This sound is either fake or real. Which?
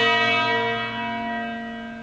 real